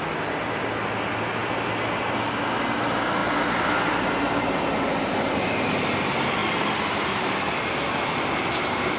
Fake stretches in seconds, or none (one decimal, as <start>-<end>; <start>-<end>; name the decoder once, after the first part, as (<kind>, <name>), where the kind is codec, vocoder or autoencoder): none

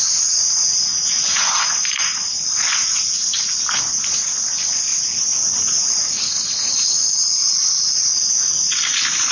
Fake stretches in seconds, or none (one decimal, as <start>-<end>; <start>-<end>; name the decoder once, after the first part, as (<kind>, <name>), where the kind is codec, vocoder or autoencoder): 0.9-3.4 (vocoder, Vocos); 4.9-8.3

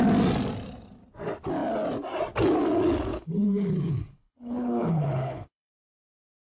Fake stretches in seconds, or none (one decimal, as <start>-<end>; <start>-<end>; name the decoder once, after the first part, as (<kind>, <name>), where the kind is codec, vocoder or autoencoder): 3.1-5.7 (codec, HILCodec)

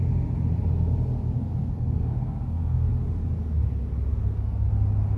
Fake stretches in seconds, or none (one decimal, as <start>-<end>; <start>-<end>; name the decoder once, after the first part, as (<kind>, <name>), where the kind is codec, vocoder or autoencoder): 1.6-2.9 (codec, SNAC); 4.1-4.7

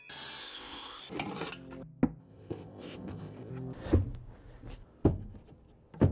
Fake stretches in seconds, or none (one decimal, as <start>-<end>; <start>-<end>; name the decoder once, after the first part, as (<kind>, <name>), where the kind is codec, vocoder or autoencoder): 0.4-1.0 (codec, ZipCodec); 2.2-3.5